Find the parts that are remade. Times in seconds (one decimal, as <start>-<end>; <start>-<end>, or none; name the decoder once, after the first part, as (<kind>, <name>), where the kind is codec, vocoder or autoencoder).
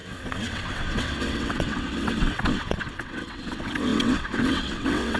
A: 0.0-5.2 (vocoder, WaveNeXt)